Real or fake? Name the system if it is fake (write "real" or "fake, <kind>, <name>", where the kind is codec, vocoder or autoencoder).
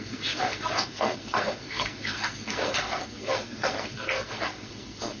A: fake, codec, SNAC